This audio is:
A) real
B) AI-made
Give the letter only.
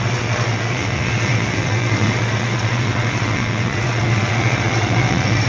B